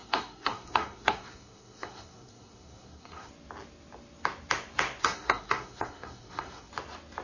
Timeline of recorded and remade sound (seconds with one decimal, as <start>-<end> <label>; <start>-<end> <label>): 0.0-3.3 remade; 3.3-5.0 recorded; 5.0-6.7 remade; 6.7-7.2 recorded

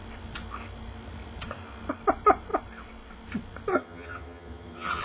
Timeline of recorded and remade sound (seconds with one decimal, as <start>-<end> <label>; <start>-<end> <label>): 0.0-3.7 recorded; 3.7-5.0 remade